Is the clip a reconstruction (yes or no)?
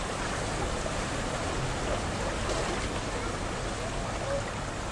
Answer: no